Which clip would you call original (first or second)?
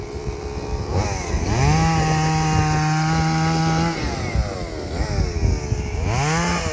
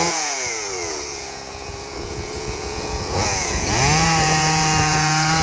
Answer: first